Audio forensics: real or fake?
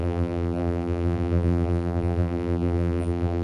fake